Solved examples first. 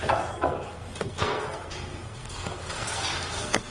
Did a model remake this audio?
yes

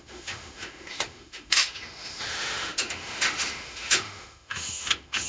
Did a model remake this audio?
yes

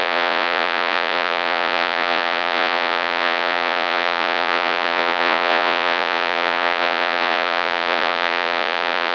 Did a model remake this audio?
yes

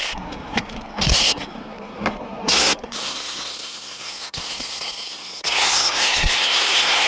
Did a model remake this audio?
yes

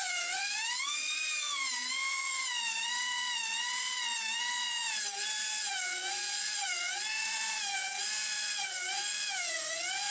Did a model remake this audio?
yes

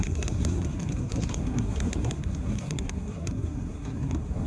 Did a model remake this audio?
yes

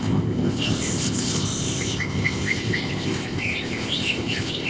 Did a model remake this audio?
yes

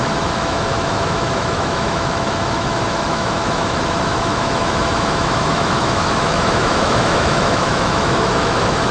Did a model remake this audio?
yes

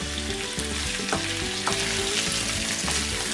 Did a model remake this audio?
no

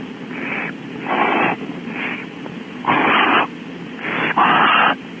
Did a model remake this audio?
no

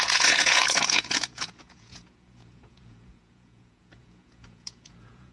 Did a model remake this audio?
yes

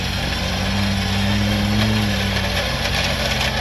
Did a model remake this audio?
no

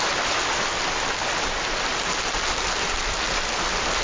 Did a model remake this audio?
no